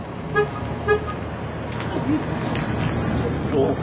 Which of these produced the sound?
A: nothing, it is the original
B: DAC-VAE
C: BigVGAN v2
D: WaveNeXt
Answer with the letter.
A